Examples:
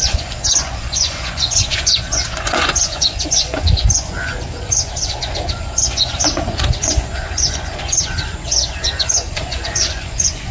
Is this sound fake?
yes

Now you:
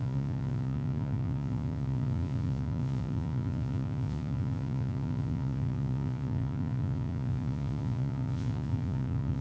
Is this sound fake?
yes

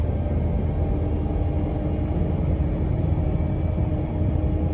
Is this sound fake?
no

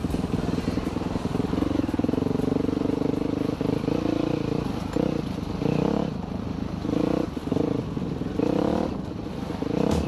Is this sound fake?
no